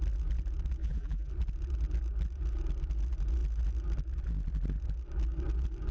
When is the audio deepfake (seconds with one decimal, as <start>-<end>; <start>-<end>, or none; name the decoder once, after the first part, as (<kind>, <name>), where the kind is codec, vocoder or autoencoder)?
0.8-1.3 (vocoder, BigVGAN v2)